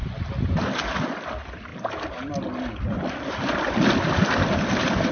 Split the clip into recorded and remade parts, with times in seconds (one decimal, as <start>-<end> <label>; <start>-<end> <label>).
0.0-5.1 recorded